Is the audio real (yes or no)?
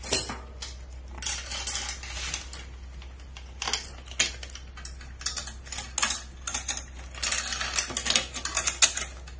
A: yes